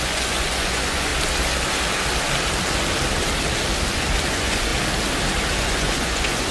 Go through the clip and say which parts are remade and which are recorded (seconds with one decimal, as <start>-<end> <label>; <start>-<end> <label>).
0.0-1.1 remade; 1.1-4.3 recorded; 4.3-4.7 remade; 4.7-5.6 recorded; 5.6-6.5 remade